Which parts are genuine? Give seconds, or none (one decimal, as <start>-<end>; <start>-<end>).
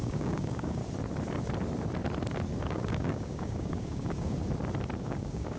0.8-2.6; 4.4-5.0